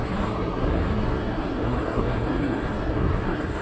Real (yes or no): no